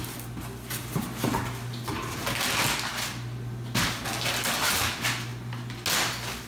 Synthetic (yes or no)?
no